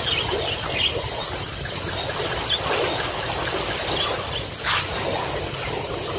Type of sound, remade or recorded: recorded